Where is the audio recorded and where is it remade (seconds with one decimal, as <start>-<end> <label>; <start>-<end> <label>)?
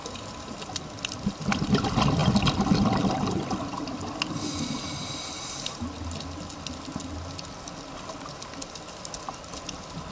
0.0-10.1 recorded